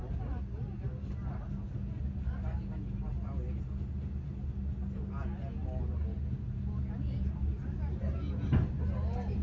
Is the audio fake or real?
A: real